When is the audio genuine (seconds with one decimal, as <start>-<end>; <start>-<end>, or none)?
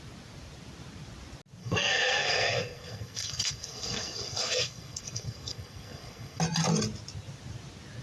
0.0-1.6; 6.4-8.0